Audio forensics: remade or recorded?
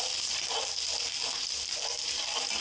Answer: recorded